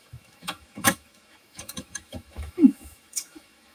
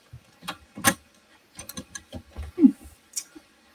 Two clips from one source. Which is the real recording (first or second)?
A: second